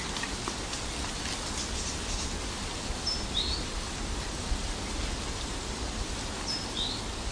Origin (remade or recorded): recorded